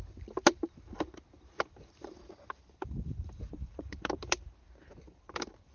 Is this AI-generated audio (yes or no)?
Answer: yes